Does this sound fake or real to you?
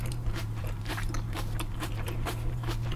fake